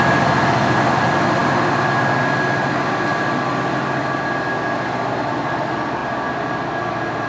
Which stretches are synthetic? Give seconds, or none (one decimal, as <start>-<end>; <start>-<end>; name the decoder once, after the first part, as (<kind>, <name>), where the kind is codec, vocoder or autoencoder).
none